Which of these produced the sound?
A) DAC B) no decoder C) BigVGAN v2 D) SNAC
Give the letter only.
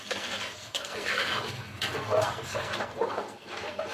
D